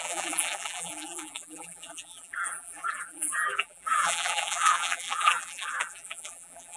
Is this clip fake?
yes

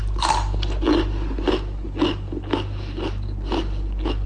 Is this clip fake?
no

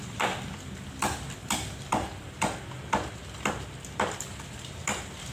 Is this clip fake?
yes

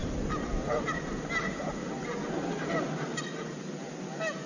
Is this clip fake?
no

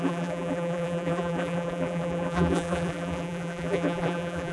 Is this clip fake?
yes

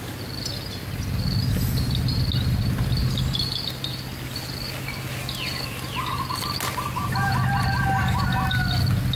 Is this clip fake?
no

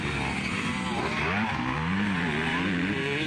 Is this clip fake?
no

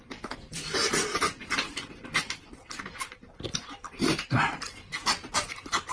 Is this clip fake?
yes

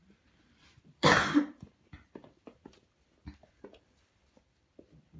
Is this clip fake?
yes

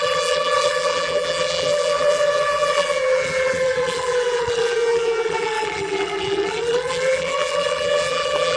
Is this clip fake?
yes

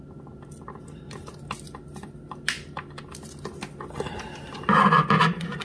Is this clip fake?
no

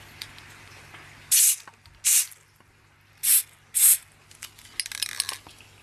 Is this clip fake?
no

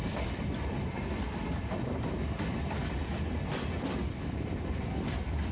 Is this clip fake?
yes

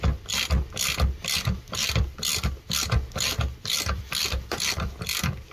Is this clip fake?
no